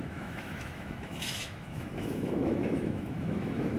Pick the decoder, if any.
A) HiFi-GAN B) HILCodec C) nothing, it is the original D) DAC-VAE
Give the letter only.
D